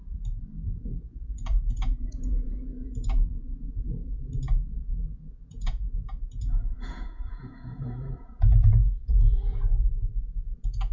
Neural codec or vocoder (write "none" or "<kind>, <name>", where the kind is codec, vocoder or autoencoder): vocoder, Vocos